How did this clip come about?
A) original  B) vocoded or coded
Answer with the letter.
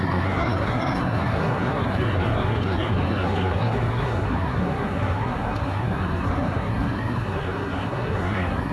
B